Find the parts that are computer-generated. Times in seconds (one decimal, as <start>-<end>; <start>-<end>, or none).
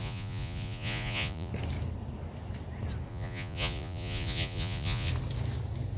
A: 0.0-1.5; 3.1-5.1